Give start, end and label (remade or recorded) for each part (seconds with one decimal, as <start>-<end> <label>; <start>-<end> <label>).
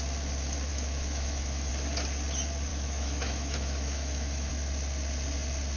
0.0-0.7 recorded; 0.7-1.7 remade; 1.7-2.7 recorded; 2.7-4.5 remade; 4.5-5.8 recorded